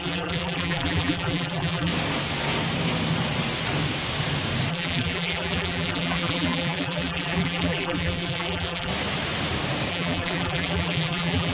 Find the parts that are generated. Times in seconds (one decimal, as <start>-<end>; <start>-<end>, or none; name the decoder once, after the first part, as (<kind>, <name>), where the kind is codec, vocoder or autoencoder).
0.0-1.9 (vocoder, BigVGAN v2); 4.7-8.9; 9.9-11.5